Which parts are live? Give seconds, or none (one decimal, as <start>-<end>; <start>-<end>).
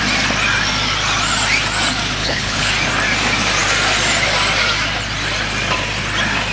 0.0-2.2; 2.7-6.5